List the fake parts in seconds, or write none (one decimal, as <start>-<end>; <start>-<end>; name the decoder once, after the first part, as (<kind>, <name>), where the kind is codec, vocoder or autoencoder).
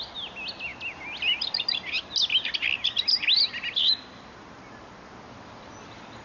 none